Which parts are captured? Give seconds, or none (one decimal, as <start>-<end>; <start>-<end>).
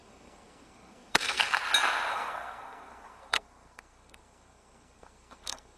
1.6-2.1